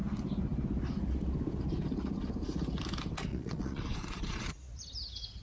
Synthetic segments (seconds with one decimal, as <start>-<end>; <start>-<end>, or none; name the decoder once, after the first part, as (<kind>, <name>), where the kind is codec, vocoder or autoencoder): 3.3-4.8 (vocoder, Vocos)